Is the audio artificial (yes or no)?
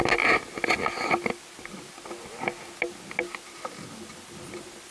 no